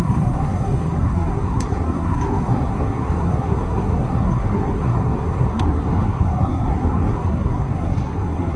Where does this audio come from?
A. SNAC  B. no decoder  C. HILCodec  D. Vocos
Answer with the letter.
A